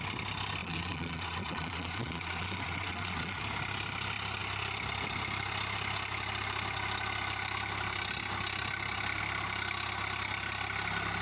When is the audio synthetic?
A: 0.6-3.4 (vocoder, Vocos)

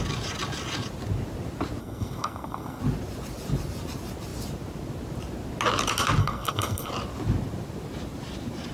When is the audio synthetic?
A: 1.8-2.8 (codec, SNAC); 6.2-6.9